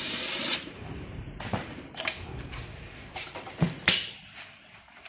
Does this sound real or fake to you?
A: fake